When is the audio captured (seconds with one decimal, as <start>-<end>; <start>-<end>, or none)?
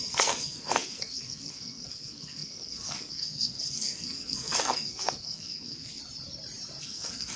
6.0-6.8